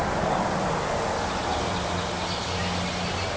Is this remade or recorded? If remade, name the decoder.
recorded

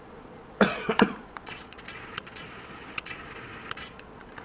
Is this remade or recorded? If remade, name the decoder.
remade, vocoder, Vocos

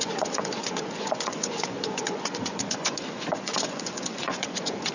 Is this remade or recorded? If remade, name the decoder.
remade, vocoder, Vocos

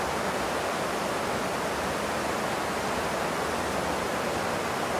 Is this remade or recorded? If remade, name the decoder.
recorded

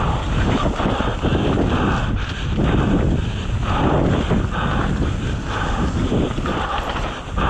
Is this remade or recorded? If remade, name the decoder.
recorded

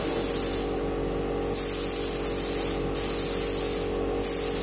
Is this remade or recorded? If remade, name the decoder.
recorded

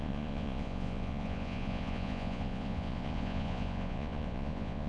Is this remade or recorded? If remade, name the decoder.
remade, vocoder, Vocos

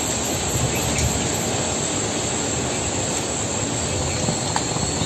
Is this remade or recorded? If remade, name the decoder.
recorded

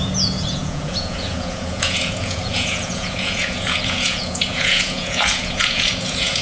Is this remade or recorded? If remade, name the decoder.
remade, vocoder, Vocos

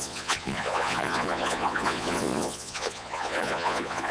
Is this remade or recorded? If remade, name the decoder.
remade, vocoder, Vocos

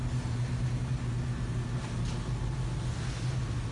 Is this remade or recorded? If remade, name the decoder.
recorded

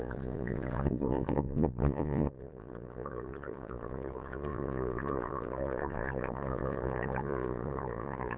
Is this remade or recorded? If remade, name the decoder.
remade, vocoder, Vocos